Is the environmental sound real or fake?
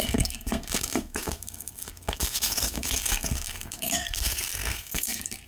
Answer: fake